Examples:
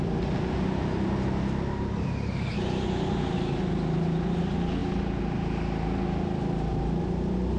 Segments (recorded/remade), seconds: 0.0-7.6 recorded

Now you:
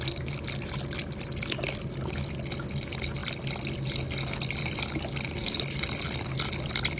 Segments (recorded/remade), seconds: 0.0-7.0 recorded

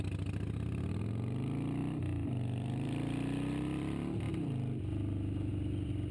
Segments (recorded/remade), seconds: 0.0-1.8 recorded; 1.8-5.5 remade; 5.5-6.1 recorded

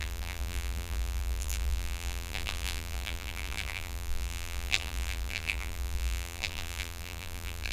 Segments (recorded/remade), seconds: 0.0-7.7 remade

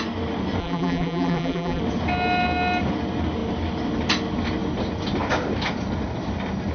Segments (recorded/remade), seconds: 0.0-0.6 recorded; 0.6-1.8 remade; 1.8-6.7 recorded

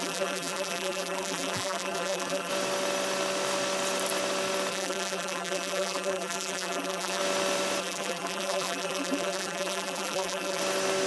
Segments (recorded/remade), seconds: 0.0-2.5 remade; 2.5-4.7 recorded; 4.7-7.2 remade; 7.2-7.8 recorded; 7.8-10.6 remade; 10.6-11.1 recorded

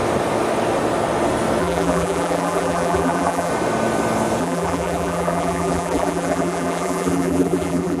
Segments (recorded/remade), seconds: 0.0-1.6 recorded; 1.6-3.5 remade; 3.5-4.4 recorded; 4.4-8.0 remade